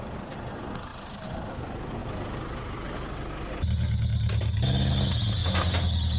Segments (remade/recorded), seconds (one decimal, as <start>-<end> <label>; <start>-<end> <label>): 0.0-6.2 recorded